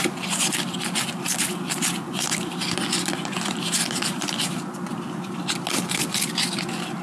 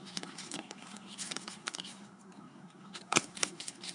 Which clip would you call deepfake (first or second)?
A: second